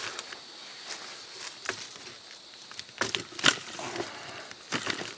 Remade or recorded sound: recorded